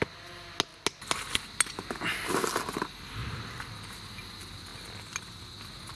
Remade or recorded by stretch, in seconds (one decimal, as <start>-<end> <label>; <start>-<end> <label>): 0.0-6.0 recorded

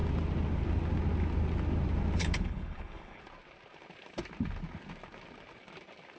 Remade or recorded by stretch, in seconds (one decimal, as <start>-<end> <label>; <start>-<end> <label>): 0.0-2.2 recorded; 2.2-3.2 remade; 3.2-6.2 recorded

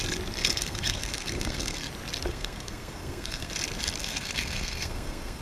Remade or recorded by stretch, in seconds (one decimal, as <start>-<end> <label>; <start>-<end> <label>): 0.0-0.4 recorded; 0.4-1.9 remade; 1.9-2.3 recorded; 2.3-3.5 remade; 3.5-4.0 recorded; 4.0-5.4 remade